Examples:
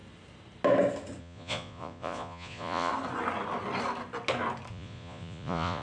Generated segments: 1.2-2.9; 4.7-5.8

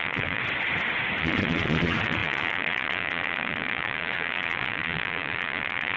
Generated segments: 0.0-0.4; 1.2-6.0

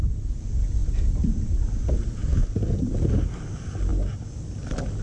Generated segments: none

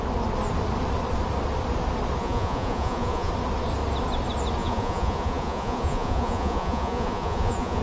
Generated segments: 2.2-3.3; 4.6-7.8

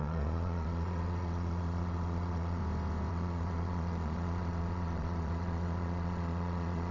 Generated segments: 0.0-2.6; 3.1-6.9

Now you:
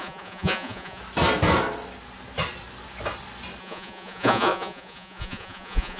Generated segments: 0.0-1.0; 3.6-6.0

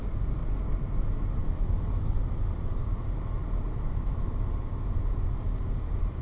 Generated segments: none